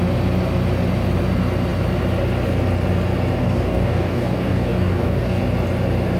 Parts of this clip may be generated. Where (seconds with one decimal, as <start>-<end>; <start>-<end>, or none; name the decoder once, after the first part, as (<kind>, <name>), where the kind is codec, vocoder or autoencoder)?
3.4-5.4 (codec, DAC)